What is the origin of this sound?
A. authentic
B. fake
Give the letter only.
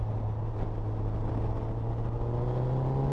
A